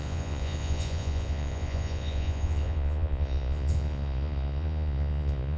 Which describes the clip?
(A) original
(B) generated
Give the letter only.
B